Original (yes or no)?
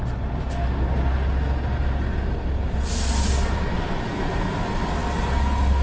yes